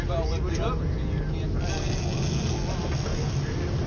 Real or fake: real